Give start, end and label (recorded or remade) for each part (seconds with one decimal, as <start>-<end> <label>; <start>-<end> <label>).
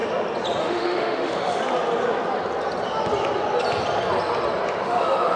0.0-0.6 recorded; 0.6-1.6 remade; 1.6-4.8 recorded; 4.8-5.4 remade